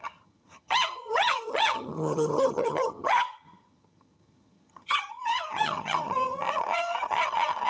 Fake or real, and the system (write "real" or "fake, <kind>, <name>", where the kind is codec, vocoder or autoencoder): fake, vocoder, HiFi-GAN